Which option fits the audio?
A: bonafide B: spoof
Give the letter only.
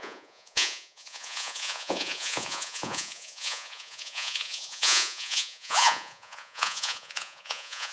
B